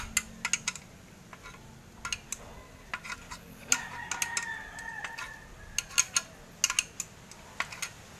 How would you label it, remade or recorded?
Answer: recorded